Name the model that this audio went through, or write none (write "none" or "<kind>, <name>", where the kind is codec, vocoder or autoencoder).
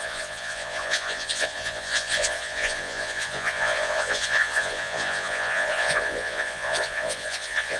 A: vocoder, Vocos